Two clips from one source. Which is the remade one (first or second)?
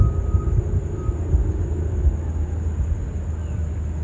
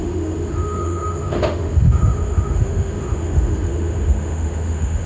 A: second